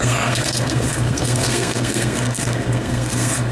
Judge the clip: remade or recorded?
remade